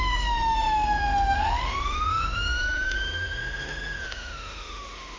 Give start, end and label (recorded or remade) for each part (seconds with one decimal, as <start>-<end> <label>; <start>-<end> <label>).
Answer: 0.0-5.2 remade